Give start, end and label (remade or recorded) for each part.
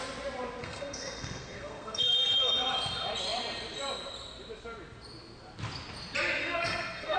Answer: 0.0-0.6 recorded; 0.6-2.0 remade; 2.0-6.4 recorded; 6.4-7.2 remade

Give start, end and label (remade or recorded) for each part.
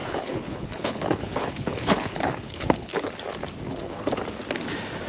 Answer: 0.0-3.1 remade; 3.1-3.7 recorded; 3.7-4.2 remade; 4.2-5.1 recorded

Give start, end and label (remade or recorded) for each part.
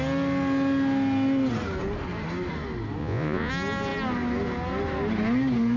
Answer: 0.0-3.0 recorded; 3.0-3.5 remade; 3.5-5.8 recorded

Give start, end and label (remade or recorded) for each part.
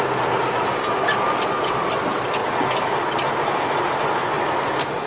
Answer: 0.0-0.7 remade; 0.7-1.2 recorded; 1.2-2.4 remade; 2.4-4.5 recorded; 4.5-5.1 remade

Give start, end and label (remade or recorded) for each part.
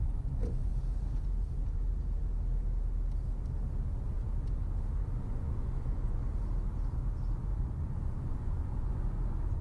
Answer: 0.0-0.7 remade; 0.7-5.2 recorded; 5.2-6.2 remade; 6.2-7.6 recorded; 7.6-9.6 remade